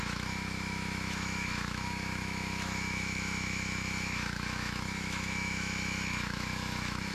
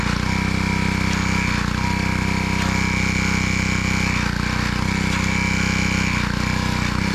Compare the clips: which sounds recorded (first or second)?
second